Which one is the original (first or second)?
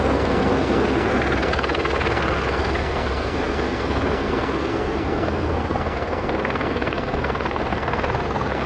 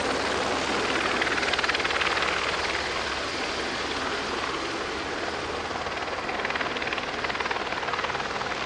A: second